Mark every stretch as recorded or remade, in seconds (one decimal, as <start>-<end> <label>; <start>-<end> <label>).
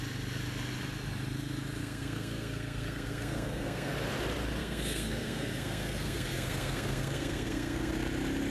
0.0-1.8 recorded; 1.8-3.9 remade; 3.9-4.6 recorded; 4.6-7.9 remade; 7.9-8.5 recorded